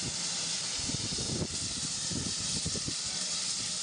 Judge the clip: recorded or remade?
remade